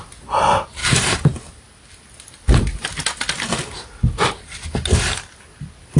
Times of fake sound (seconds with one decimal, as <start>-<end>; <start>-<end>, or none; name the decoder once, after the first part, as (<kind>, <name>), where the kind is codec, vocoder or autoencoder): none